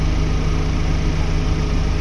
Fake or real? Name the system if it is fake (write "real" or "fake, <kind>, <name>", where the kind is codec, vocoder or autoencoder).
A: real